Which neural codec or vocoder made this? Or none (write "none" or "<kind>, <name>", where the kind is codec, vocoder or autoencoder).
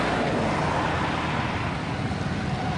none